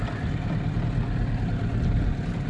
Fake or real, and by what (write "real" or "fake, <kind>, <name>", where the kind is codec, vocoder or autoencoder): real